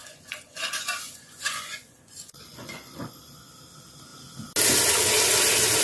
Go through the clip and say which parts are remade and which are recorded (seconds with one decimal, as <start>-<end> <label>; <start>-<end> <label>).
0.0-3.5 remade; 3.5-5.8 recorded